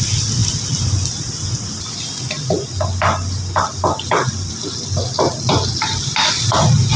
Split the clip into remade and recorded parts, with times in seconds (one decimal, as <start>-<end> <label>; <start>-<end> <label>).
0.0-7.0 recorded